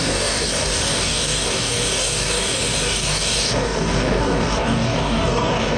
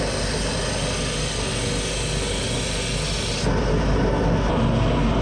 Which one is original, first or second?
second